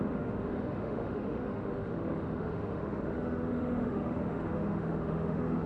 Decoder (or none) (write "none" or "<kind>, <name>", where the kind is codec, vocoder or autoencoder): autoencoder, DAC-VAE